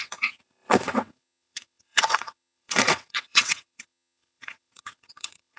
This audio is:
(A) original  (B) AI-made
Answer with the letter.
B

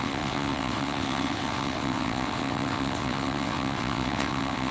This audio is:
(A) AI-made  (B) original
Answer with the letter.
A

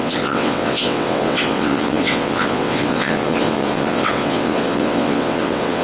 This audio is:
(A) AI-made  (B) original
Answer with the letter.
A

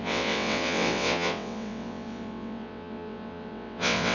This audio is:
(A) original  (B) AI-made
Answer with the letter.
B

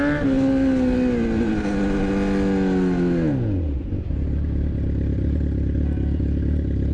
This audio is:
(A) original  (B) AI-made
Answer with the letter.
A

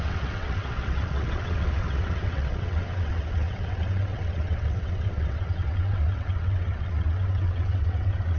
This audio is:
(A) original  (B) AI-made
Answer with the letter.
B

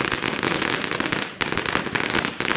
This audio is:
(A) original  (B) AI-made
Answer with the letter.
A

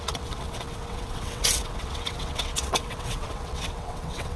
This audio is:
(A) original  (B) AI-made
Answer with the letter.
B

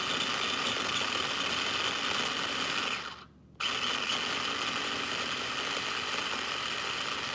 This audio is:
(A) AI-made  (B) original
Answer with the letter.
B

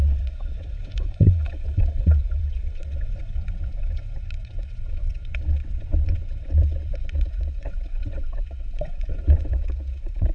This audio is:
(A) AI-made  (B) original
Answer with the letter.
A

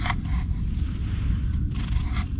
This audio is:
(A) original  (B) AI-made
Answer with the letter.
A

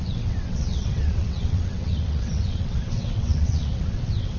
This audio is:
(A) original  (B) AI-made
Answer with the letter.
B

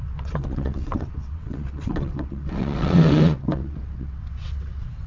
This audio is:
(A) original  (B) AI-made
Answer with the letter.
B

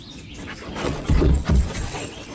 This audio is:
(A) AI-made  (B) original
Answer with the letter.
A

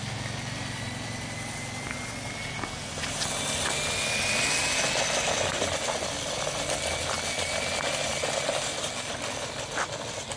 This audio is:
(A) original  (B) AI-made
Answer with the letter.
A